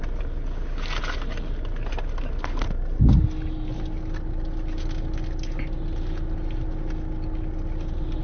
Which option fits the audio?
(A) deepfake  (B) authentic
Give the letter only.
B